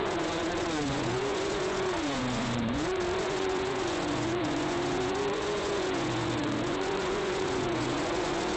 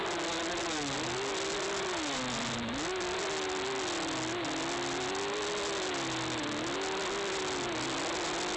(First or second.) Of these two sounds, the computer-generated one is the first